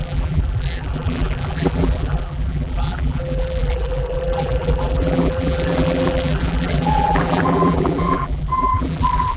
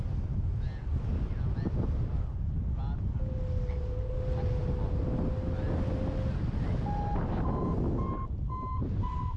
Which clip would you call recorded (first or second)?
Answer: second